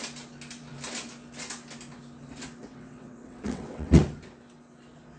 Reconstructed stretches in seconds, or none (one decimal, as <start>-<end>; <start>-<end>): 2.6-4.0